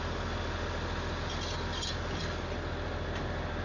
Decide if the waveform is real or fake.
real